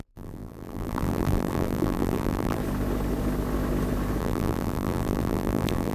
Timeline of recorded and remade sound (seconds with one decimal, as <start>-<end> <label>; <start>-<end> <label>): 0.0-2.6 remade; 2.6-4.2 recorded; 4.2-5.9 remade